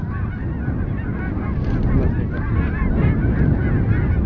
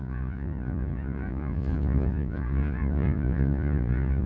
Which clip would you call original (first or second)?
first